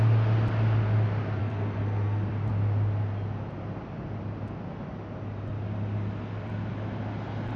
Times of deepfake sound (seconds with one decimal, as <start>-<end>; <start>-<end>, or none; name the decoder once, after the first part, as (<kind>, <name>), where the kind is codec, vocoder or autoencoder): 1.4-2.3 (codec, SNAC)